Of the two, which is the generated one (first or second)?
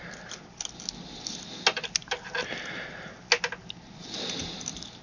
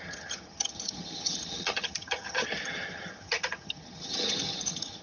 second